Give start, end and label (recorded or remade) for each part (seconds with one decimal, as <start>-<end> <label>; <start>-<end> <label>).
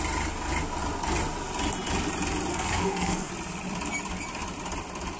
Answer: 0.0-2.5 recorded; 2.5-3.3 remade; 3.3-5.2 recorded